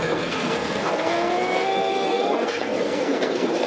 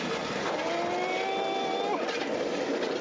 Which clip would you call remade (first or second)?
first